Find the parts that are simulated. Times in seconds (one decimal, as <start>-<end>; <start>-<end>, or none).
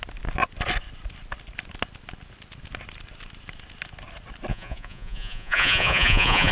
4.5-6.5